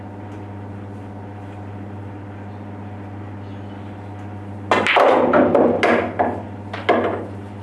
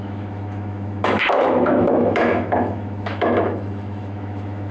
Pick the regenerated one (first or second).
second